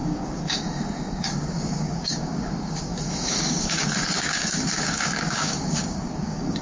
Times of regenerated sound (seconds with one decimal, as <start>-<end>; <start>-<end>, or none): 0.0-6.6